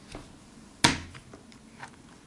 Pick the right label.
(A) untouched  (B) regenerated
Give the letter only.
A